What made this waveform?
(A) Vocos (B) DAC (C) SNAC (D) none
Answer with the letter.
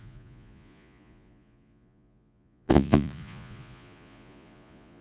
A